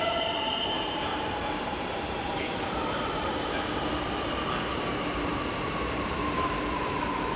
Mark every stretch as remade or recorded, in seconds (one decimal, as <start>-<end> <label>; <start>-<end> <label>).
0.0-3.8 remade; 3.8-5.3 recorded; 5.3-6.1 remade; 6.1-7.4 recorded